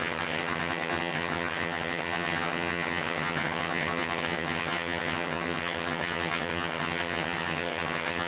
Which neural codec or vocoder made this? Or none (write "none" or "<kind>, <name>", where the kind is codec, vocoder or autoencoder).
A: vocoder, HiFi-GAN